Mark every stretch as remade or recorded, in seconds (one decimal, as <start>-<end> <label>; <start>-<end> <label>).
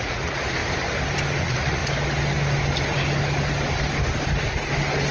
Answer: 0.0-0.6 remade; 0.6-1.4 recorded; 1.4-1.8 remade; 1.8-5.1 recorded